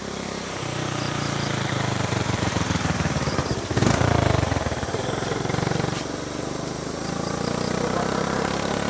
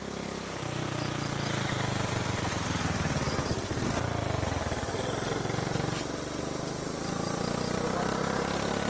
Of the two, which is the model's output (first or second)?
first